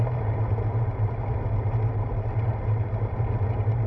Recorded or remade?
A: remade